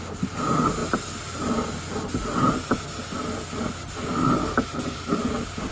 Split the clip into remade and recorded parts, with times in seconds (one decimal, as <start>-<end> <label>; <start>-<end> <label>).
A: 0.0-4.4 recorded; 4.4-5.3 remade; 5.3-5.7 recorded